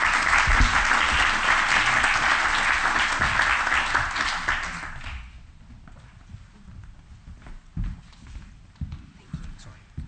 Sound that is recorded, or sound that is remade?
recorded